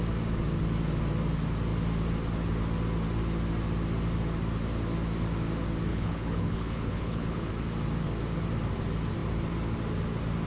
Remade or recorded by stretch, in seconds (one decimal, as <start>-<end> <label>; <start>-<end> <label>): 0.0-5.9 recorded; 5.9-7.5 remade; 7.5-10.5 recorded